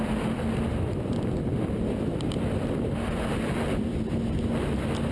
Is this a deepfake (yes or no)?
yes